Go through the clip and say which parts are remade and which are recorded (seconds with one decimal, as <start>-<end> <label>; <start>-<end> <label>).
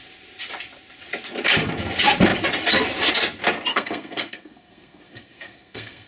0.0-3.7 recorded; 3.7-6.1 remade